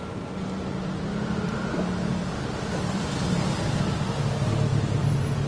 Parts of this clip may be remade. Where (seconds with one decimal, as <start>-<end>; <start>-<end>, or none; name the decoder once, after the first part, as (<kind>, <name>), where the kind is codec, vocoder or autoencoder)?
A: 1.7-3.8 (vocoder, BigVGAN v2); 4.7-5.5